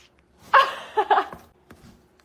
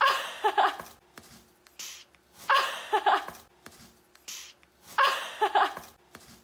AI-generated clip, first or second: first